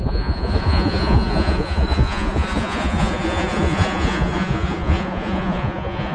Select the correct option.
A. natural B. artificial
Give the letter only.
B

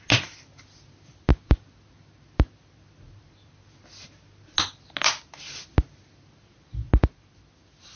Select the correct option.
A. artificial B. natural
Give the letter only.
B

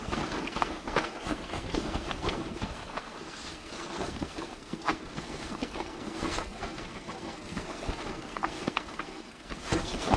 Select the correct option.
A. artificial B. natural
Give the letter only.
A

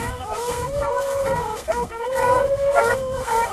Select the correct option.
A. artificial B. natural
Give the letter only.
A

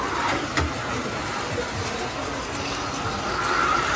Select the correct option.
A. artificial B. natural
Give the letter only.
B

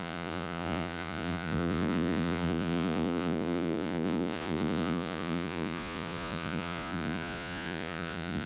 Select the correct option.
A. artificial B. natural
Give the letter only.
A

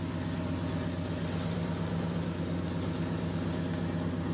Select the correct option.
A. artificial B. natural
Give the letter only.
B